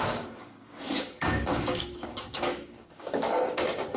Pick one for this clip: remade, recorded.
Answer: remade